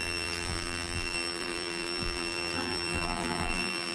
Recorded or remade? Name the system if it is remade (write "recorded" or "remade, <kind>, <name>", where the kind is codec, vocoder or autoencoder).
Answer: remade, vocoder, BigVGAN v2